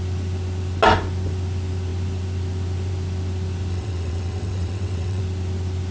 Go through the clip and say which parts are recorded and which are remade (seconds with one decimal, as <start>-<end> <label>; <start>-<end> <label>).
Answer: 0.0-3.7 recorded; 3.7-5.2 remade; 5.2-5.9 recorded

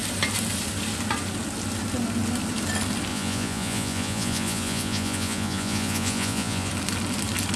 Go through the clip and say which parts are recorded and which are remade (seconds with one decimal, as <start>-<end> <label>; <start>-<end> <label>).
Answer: 0.0-3.1 recorded; 3.1-6.7 remade; 6.7-7.6 recorded

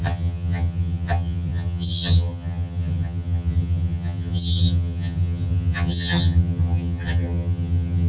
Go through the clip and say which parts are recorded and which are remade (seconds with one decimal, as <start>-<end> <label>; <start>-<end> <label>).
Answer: 0.0-8.1 remade

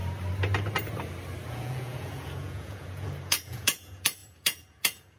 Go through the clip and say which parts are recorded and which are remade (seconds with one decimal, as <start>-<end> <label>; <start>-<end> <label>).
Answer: 0.0-1.5 recorded; 1.5-5.2 remade

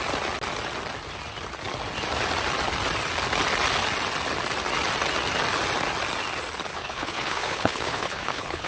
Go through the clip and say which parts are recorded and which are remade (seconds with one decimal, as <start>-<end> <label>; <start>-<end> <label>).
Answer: 0.0-6.7 recorded; 6.7-8.7 remade